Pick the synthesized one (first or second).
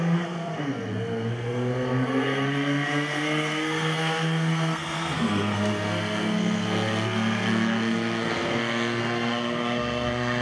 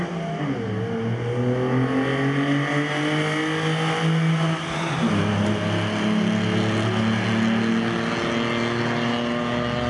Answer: first